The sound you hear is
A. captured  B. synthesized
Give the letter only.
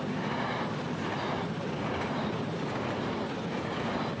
A